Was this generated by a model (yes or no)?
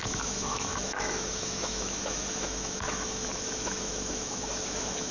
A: yes